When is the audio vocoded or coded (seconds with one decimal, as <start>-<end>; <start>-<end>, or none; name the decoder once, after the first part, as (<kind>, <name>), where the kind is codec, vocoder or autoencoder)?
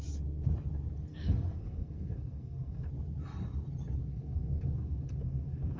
1.1-2.9 (codec, SNAC); 4.1-5.8